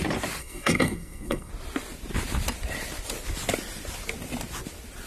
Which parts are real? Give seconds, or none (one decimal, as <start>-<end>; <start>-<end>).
0.0-0.4; 1.5-5.1